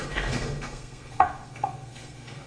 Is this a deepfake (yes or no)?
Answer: yes